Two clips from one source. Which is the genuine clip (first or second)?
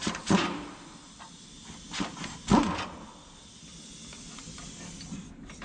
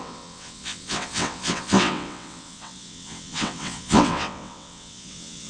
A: first